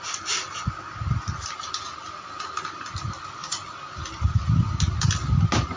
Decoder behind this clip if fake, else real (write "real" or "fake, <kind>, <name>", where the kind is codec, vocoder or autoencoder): real